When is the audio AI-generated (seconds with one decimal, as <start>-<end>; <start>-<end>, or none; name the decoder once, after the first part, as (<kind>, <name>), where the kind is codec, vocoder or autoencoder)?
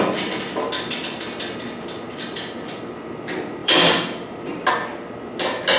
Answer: 3.6-4.7 (vocoder, BigVGAN v2)